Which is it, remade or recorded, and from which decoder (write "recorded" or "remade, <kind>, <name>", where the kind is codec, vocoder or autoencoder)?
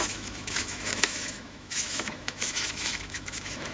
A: remade, autoencoder, DAC-VAE